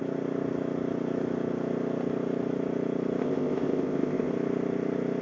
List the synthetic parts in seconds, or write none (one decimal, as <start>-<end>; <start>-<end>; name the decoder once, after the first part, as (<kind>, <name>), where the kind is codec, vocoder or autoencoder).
3.2-4.3 (codec, ZipCodec)